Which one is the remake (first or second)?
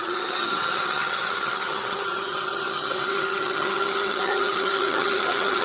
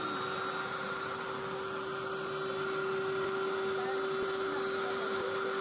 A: first